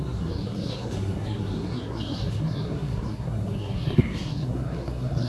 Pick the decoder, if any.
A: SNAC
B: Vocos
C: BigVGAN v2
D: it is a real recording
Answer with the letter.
A